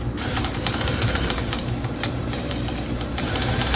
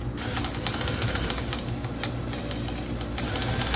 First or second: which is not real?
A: first